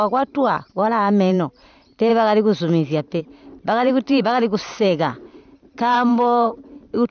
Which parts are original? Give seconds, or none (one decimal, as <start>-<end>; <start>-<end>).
2.1-3.2